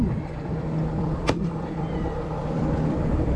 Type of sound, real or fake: fake